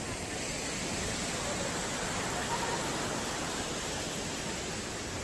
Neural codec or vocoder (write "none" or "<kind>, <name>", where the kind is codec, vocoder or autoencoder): none